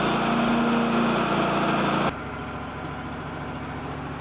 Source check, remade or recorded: recorded